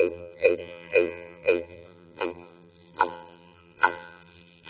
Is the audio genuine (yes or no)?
no